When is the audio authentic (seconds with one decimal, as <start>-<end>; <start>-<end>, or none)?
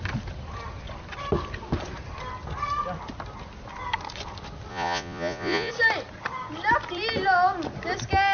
0.0-4.7; 5.7-8.3